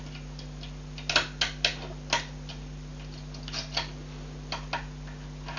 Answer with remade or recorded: recorded